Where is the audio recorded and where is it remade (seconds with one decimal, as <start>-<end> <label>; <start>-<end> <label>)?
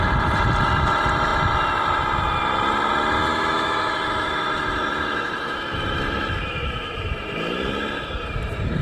0.0-3.3 recorded; 3.3-8.1 remade; 8.1-8.8 recorded